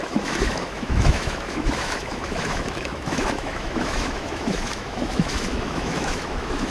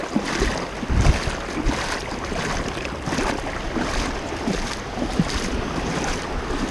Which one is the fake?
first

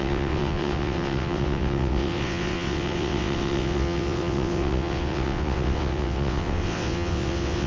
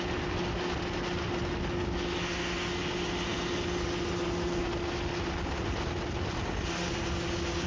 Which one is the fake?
first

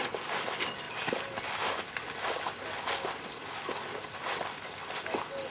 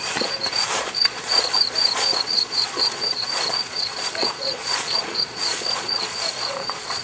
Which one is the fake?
second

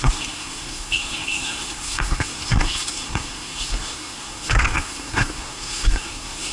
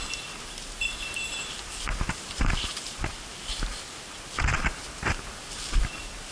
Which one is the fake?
first